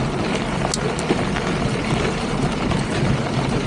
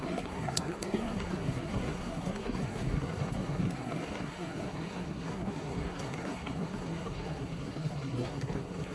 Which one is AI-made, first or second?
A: second